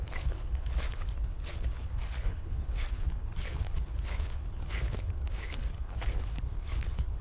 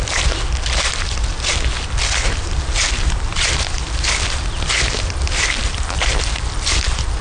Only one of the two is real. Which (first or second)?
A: second